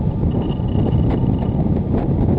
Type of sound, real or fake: real